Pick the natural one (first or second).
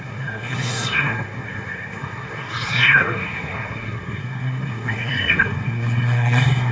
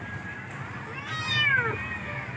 second